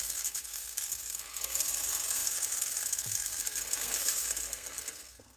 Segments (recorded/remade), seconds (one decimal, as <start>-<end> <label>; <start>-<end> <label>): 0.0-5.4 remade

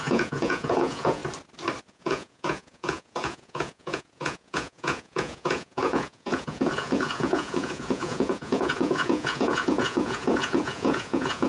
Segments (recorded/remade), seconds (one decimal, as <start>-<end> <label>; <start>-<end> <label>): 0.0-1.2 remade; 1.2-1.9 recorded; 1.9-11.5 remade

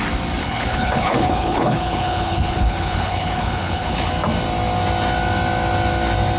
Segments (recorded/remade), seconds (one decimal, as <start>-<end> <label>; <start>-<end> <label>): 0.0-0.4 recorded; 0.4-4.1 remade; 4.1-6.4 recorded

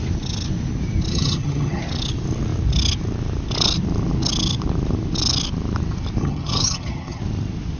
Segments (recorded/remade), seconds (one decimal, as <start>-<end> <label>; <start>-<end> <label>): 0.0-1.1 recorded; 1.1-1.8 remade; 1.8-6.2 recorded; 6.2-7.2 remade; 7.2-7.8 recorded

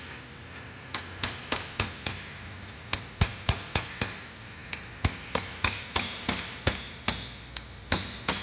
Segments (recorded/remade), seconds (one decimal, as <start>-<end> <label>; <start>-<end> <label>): 0.0-8.4 recorded

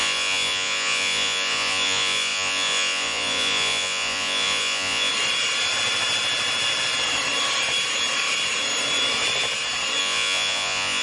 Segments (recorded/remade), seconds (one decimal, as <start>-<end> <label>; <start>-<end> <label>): 0.0-5.1 remade; 5.1-10.0 recorded; 10.0-11.0 remade

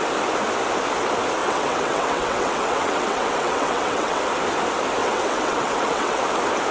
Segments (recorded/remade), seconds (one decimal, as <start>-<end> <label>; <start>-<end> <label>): 0.0-1.4 recorded; 1.4-4.2 remade; 4.2-5.0 recorded; 5.0-6.2 remade; 6.2-6.7 recorded

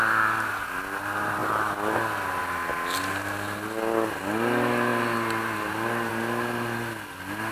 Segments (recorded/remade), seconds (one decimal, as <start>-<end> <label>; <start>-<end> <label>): 0.0-7.5 recorded